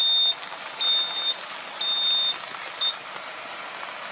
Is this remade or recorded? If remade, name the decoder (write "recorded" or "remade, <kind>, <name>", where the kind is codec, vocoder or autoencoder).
recorded